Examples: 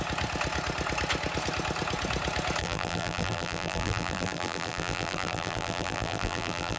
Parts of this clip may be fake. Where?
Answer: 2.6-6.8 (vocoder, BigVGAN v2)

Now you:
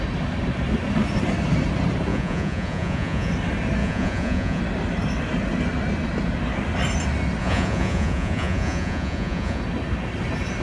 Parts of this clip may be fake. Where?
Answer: 2.1-3.3 (vocoder, Vocos); 3.8-4.6; 7.4-9.6